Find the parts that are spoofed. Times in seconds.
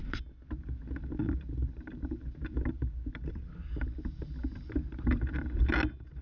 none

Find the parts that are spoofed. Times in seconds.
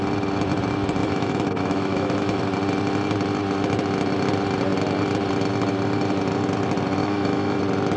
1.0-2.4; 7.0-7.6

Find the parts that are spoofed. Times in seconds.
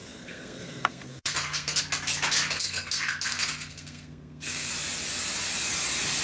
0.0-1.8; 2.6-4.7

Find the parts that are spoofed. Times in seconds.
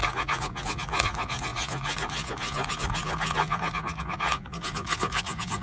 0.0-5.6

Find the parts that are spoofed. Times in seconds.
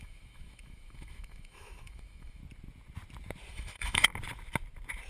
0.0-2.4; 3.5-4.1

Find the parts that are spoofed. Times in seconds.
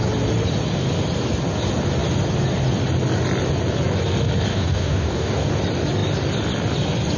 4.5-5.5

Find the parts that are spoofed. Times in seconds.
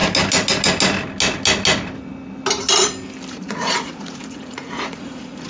3.3-5.5